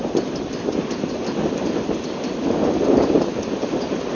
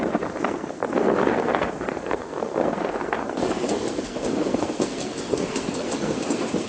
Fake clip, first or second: second